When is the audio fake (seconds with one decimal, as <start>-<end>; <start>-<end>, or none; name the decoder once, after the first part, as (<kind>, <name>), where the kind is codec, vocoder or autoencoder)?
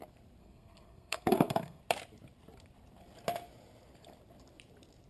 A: 0.4-1.8 (codec, SNAC)